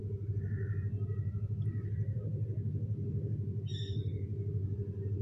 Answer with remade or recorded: remade